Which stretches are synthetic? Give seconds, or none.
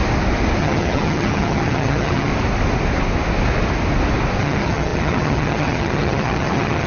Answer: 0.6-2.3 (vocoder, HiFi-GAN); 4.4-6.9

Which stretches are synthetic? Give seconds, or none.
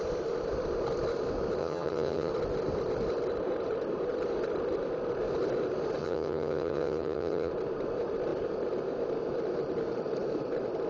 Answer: 1.6-2.3 (vocoder, HiFi-GAN); 6.0-7.5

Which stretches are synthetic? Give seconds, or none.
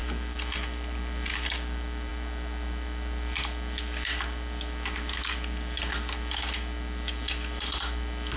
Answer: none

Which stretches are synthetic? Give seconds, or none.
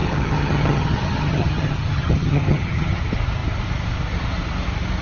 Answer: 0.0-3.0 (vocoder, HiFi-GAN)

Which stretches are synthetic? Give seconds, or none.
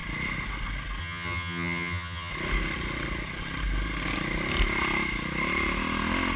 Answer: 1.0-2.3 (vocoder, HiFi-GAN)